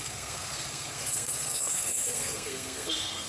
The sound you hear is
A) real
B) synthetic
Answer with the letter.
B